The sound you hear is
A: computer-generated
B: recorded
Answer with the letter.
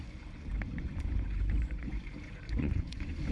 A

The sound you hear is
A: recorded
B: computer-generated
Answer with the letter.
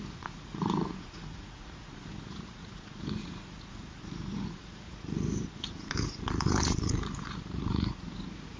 B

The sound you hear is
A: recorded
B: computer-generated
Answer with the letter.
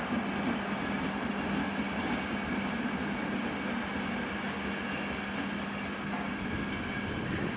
A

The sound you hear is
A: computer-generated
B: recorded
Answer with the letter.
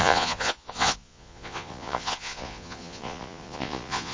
A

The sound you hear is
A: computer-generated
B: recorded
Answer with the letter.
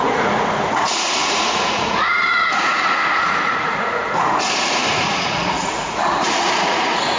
A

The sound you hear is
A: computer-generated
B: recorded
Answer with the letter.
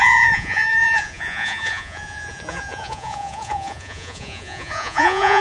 A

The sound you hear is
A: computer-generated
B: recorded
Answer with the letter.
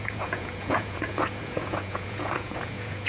A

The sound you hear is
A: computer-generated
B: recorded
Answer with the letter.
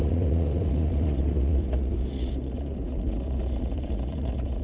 A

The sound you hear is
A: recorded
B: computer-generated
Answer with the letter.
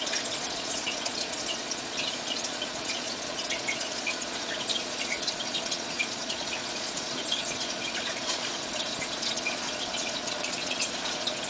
B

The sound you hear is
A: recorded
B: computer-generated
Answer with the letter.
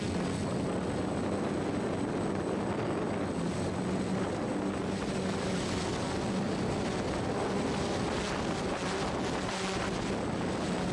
A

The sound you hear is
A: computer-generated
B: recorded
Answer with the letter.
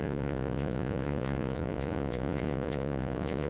A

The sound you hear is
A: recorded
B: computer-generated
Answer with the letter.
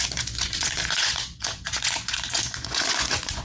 B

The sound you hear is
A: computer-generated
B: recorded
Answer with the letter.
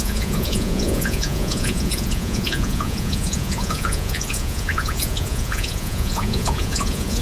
A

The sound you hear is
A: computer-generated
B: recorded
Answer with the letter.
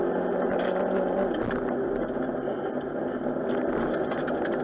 B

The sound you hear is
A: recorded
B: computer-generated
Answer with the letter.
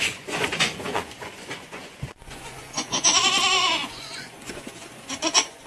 B